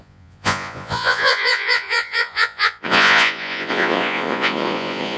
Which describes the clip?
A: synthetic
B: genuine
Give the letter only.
A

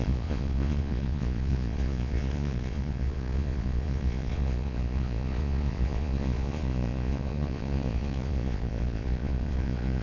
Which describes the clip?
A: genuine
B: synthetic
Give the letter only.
B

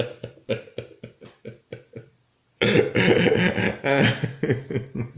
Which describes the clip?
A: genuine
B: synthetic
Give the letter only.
A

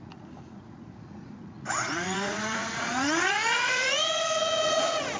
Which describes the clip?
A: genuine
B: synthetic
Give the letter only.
B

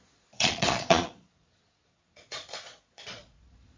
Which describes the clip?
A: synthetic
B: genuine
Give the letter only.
A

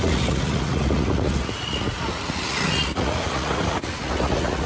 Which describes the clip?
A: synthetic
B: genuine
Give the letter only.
A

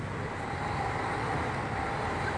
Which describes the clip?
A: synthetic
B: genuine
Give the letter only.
B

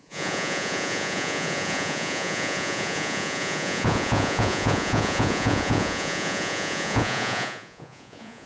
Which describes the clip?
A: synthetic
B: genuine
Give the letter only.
A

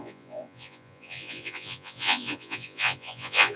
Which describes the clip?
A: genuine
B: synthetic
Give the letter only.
B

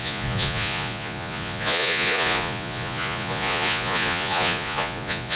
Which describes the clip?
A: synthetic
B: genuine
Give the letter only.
A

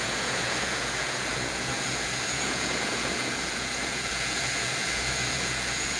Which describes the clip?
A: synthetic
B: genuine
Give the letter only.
A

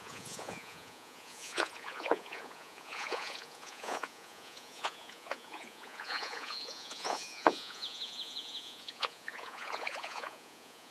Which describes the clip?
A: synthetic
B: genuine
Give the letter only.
A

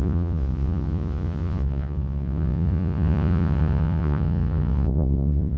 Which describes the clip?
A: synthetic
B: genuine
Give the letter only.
A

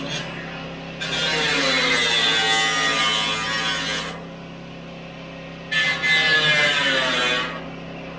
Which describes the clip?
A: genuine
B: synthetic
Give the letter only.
A